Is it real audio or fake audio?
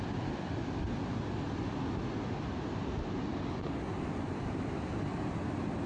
real